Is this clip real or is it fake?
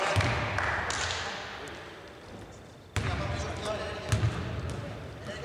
real